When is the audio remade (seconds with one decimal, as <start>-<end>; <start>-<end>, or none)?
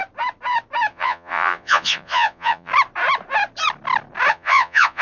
0.9-2.7; 4.3-5.0